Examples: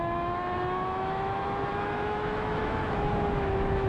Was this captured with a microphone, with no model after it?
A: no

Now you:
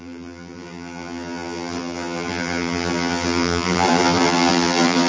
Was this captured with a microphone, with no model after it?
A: no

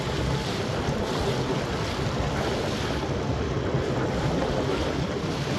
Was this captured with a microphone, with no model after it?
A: yes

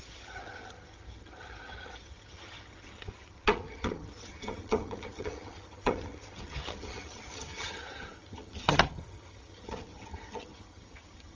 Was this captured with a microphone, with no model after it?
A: no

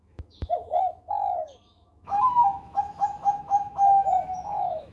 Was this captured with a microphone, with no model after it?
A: no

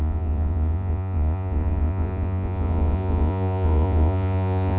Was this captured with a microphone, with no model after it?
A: no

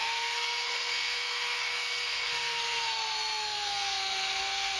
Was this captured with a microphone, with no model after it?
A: no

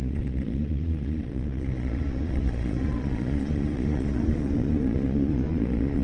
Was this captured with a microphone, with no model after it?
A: no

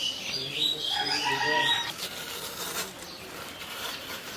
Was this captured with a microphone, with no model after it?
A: no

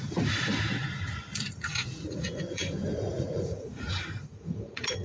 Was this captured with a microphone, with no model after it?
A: no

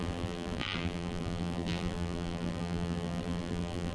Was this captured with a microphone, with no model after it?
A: no